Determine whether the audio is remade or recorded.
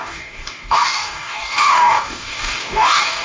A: remade